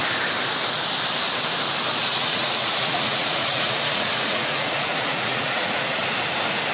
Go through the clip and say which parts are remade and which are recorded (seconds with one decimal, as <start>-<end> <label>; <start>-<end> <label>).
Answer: 0.0-2.0 recorded; 2.0-6.0 remade; 6.0-6.7 recorded